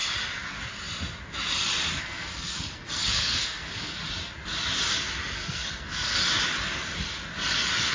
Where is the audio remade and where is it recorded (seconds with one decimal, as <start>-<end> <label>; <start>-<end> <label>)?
0.0-2.0 recorded; 2.0-4.0 remade; 4.0-5.2 recorded; 5.2-6.2 remade; 6.2-7.9 recorded